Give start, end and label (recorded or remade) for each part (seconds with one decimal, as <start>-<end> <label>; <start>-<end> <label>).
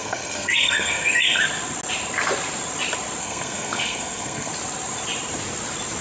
0.0-1.4 remade; 1.4-3.2 recorded; 3.2-4.5 remade; 4.5-6.0 recorded